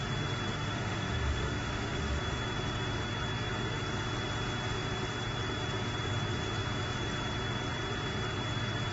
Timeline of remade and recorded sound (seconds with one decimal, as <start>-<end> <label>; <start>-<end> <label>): 0.0-0.5 recorded; 0.5-2.2 remade; 2.2-8.9 recorded